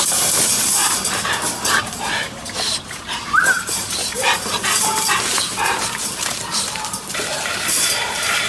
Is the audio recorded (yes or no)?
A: no